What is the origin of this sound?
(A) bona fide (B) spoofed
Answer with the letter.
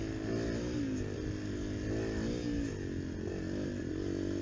A